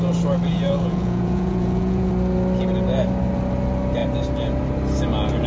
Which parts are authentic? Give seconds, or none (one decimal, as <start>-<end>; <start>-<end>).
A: 0.0-0.5; 2.1-5.5